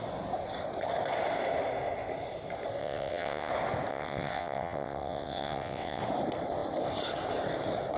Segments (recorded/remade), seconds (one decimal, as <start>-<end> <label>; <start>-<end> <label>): 0.0-2.8 recorded; 2.8-3.5 remade; 3.5-3.9 recorded; 3.9-6.0 remade; 6.0-8.0 recorded